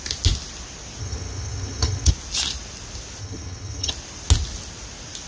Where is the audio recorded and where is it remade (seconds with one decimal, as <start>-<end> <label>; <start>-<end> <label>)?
0.0-1.0 recorded; 1.0-2.1 remade; 2.1-3.2 recorded; 3.2-3.9 remade; 3.9-5.3 recorded